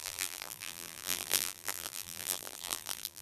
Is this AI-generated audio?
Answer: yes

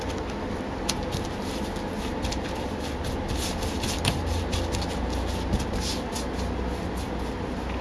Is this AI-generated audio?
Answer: no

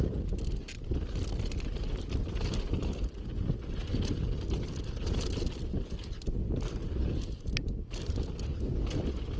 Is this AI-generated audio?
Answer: no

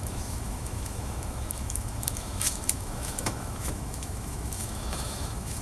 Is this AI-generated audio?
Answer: yes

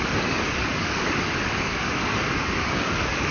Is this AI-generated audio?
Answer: yes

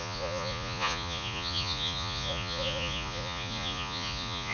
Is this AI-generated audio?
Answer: yes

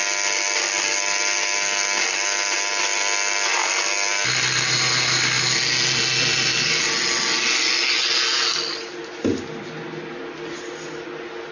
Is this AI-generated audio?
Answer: no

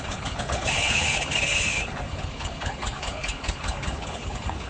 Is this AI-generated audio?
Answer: yes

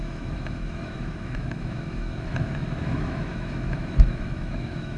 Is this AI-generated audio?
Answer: yes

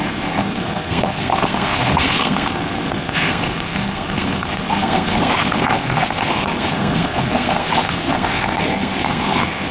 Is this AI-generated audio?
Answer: yes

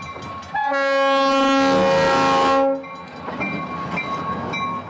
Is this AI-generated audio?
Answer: no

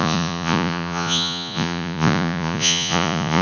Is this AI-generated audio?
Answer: yes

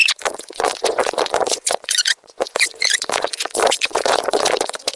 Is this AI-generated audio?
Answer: yes